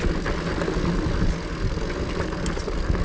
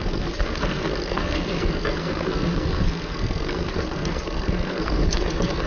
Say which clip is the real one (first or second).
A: first